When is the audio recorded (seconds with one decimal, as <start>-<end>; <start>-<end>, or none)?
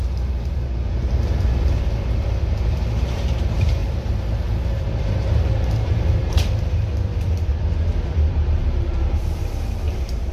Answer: 7.5-8.3